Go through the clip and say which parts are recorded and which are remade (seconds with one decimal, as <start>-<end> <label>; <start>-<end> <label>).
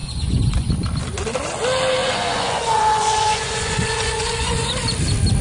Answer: 0.0-0.7 remade; 0.7-2.0 recorded; 2.0-4.7 remade; 4.7-5.4 recorded